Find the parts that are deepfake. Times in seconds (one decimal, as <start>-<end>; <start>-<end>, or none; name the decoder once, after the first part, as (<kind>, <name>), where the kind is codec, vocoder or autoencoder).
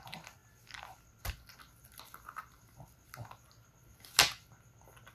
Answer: none